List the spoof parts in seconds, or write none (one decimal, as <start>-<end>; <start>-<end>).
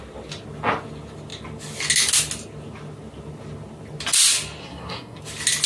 4.6-5.2